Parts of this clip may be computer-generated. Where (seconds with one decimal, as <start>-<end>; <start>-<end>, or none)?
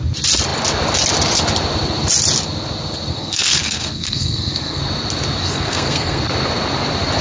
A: 3.1-4.8; 5.4-6.2